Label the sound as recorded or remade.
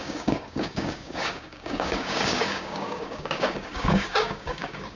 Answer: remade